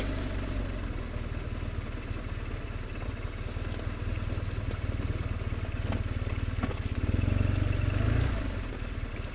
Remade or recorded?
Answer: recorded